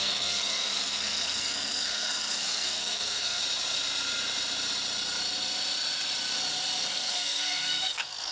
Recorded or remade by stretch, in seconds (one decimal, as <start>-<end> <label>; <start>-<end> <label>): 0.0-3.4 remade; 3.4-6.9 recorded; 6.9-8.3 remade